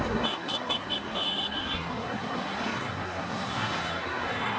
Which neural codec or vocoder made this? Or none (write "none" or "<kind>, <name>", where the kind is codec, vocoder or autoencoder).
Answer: codec, SNAC